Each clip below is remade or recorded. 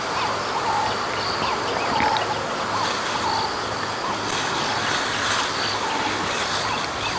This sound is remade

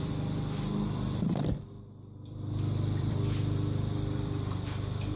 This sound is remade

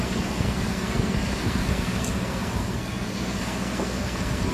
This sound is remade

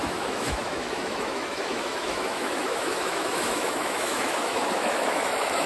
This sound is remade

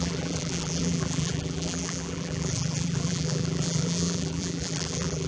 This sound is remade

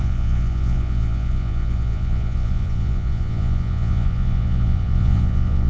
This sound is remade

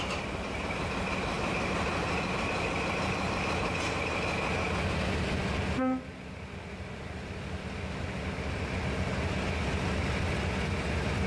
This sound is recorded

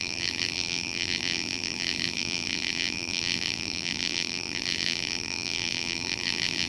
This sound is remade